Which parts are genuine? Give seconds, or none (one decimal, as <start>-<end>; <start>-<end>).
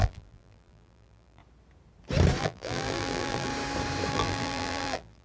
1.4-2.4; 3.5-4.1